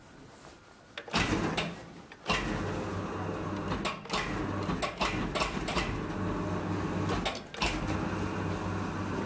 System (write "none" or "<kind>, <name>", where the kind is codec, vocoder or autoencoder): none